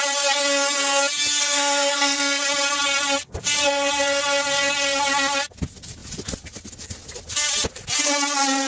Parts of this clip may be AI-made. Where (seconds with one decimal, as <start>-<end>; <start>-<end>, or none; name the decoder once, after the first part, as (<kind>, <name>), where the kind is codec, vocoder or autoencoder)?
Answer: 1.4-2.4 (codec, SNAC)